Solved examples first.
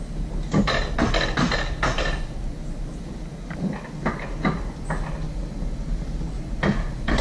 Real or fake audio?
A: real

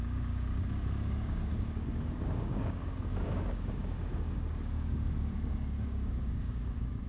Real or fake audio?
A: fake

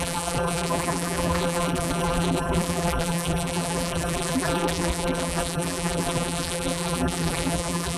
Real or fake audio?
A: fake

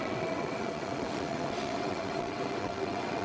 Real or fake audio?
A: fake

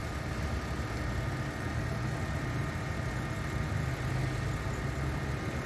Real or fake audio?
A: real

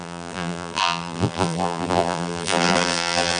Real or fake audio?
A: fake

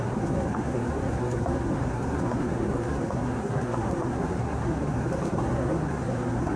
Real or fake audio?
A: fake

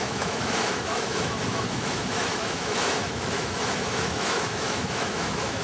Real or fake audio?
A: fake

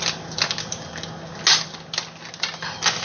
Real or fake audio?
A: real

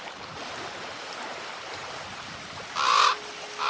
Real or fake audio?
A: real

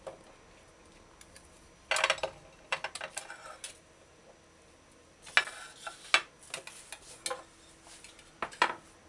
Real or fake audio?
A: real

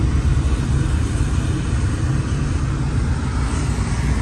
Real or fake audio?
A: real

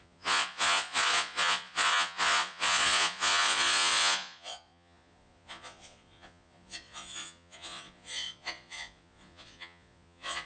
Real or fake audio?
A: fake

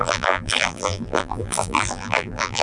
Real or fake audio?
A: fake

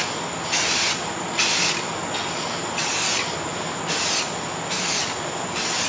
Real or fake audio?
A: real